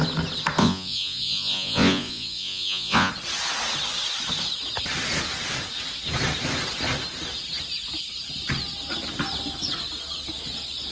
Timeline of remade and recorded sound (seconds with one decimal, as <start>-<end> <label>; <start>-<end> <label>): 0.0-0.6 recorded; 0.6-3.1 remade; 3.1-10.9 recorded